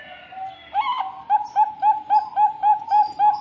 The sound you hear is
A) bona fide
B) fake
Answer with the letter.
A